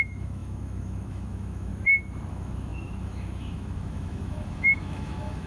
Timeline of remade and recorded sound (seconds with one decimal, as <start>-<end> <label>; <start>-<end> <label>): 0.0-1.7 remade; 1.7-2.3 recorded; 2.3-5.5 remade